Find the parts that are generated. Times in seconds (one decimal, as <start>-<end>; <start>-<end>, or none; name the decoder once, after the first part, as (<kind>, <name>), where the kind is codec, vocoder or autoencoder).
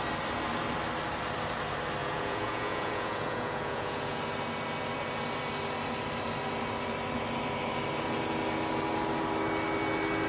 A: 2.0-4.2 (vocoder, Vocos)